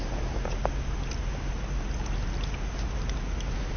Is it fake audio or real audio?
real